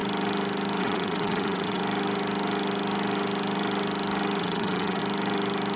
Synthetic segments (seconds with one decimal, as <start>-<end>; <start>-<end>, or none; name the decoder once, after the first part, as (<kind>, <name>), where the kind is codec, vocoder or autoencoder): 0.8-1.8 (vocoder, Vocos); 4.4-5.0